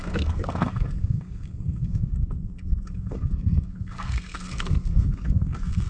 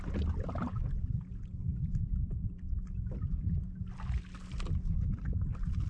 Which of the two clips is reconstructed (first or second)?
first